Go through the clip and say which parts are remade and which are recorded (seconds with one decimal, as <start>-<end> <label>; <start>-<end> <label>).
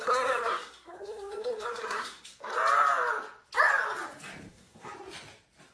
0.0-2.5 remade; 2.5-4.5 recorded; 4.5-4.9 remade; 4.9-5.7 recorded